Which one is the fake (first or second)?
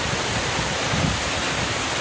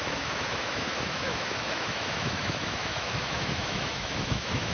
second